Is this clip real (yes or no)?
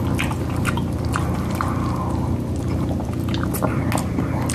yes